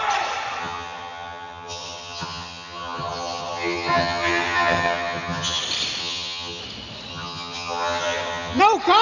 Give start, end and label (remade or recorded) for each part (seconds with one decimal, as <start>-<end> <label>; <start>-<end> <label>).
0.0-0.6 recorded; 0.6-5.6 remade; 5.6-6.0 recorded; 6.0-6.6 remade; 6.6-7.1 recorded; 7.1-8.6 remade; 8.6-9.0 recorded